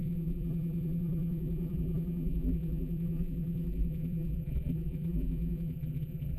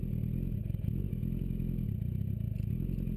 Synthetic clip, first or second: first